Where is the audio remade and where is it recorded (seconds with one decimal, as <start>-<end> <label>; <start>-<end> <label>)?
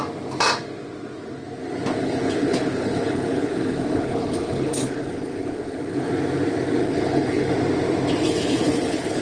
0.0-2.0 recorded; 2.0-6.1 remade; 6.1-6.8 recorded; 6.8-7.5 remade; 7.5-8.2 recorded; 8.2-9.2 remade